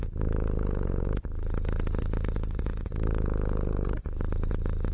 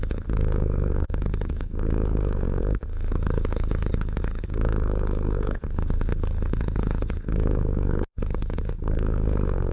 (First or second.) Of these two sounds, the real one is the first